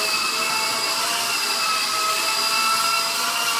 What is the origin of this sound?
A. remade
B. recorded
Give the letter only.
B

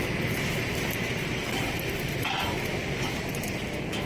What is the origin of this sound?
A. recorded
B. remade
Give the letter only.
A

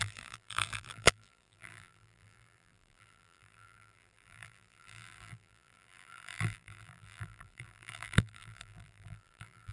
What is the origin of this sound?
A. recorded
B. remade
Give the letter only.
B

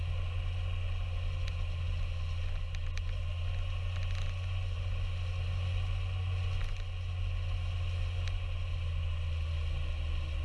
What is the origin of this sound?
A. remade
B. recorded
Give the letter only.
B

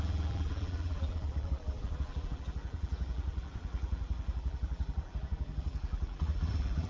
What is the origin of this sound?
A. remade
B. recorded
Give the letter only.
A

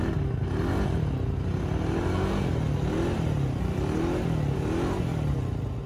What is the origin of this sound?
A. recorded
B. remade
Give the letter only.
A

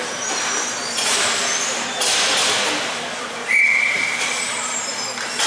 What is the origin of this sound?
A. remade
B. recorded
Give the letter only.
A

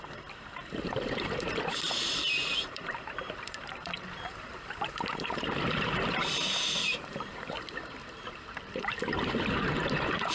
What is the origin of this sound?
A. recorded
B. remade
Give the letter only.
B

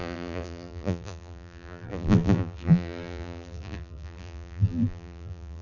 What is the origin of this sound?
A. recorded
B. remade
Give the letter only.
B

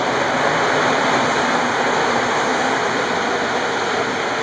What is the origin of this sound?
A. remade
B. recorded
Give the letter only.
B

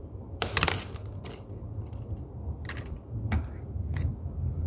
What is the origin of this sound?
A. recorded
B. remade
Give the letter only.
A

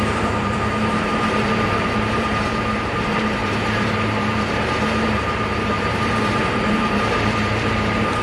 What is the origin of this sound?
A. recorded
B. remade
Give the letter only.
B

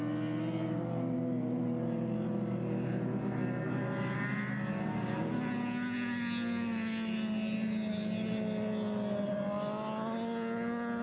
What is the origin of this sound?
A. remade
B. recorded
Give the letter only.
B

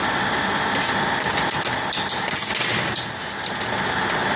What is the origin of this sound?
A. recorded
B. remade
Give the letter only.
A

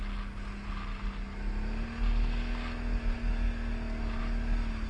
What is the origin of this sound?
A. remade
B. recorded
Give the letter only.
B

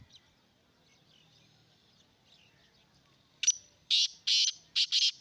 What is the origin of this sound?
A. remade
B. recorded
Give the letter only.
B